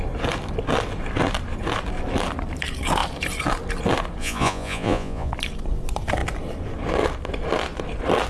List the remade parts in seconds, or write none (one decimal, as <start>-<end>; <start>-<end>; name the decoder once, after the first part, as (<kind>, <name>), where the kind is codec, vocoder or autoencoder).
4.2-5.3 (vocoder, Vocos)